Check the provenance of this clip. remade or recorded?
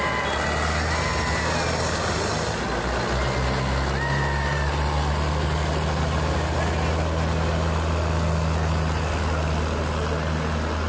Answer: recorded